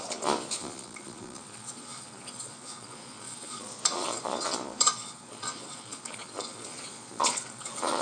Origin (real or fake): fake